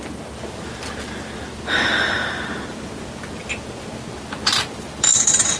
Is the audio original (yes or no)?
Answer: yes